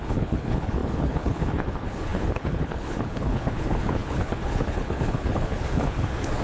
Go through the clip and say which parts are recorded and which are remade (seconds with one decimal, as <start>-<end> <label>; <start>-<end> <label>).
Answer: 0.0-6.4 remade